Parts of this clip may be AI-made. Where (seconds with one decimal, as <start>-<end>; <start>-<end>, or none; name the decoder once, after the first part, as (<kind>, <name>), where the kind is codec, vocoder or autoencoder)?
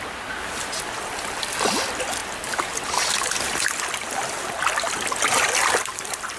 none